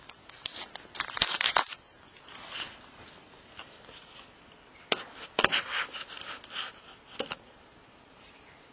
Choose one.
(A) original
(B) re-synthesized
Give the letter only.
A